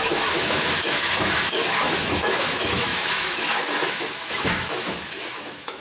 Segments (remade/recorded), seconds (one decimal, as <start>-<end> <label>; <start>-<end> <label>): 0.0-5.8 remade